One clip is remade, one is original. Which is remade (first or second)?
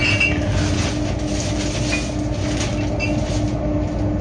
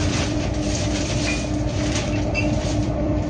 second